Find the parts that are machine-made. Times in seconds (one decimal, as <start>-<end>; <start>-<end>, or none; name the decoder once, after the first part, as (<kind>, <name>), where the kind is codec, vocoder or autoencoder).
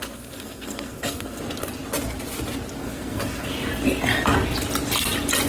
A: 0.0-1.4 (codec, SNAC); 2.8-3.7